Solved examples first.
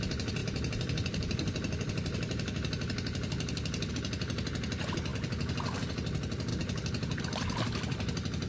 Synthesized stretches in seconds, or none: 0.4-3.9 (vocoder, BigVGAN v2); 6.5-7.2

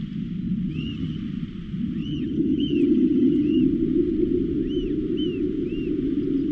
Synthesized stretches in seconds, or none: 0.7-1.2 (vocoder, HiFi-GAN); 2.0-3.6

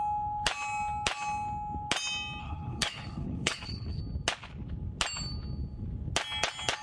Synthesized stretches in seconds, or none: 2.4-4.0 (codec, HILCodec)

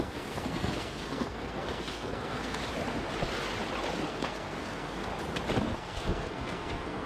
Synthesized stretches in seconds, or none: 0.0-2.6 (codec, SNAC); 4.1-5.1; 5.6-7.1

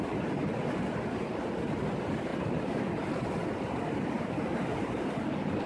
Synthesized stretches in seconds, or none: none